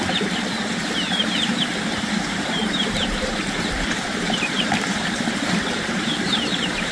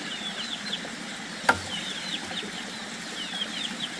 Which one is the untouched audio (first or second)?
second